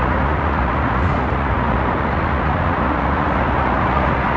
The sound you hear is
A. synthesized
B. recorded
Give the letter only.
A